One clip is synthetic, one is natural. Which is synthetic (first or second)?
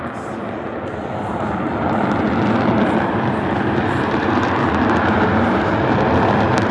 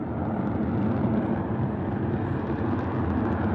first